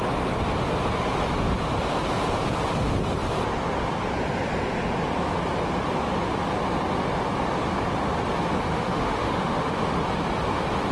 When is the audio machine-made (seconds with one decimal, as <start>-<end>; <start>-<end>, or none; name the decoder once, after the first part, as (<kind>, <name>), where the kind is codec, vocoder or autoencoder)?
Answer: 8.7-9.7 (autoencoder, DAC-VAE)